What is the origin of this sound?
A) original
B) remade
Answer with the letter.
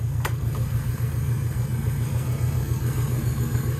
B